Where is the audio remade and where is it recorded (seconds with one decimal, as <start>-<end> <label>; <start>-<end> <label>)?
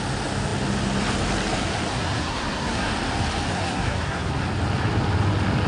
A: 0.0-1.9 recorded; 1.9-2.9 remade; 2.9-3.5 recorded; 3.5-4.3 remade; 4.3-5.7 recorded